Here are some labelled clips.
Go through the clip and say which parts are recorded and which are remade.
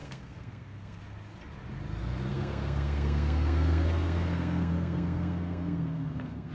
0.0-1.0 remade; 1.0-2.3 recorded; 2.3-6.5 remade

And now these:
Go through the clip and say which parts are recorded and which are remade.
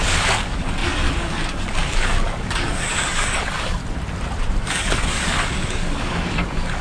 0.0-3.8 remade; 3.8-4.6 recorded; 4.6-6.8 remade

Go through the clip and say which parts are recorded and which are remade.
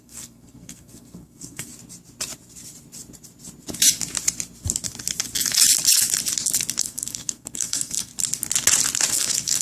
0.0-1.7 remade; 1.7-6.8 recorded; 6.8-8.1 remade; 8.1-9.1 recorded; 9.1-9.6 remade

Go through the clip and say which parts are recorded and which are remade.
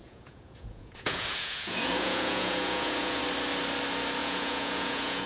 0.0-3.2 remade; 3.2-4.2 recorded; 4.2-5.3 remade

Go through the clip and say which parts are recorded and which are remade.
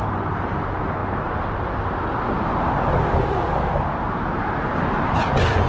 0.0-5.7 recorded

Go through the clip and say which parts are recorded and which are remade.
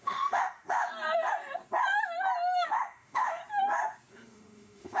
0.0-0.9 remade; 0.9-2.6 recorded; 2.6-3.4 remade; 3.4-4.1 recorded; 4.1-5.0 remade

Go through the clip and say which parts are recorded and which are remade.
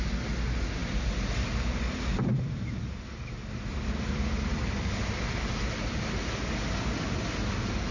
0.0-7.9 recorded